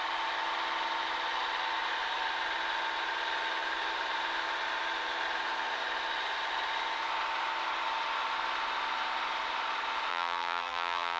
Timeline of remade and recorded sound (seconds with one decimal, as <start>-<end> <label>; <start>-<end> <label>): 0.0-10.1 recorded; 10.1-11.2 remade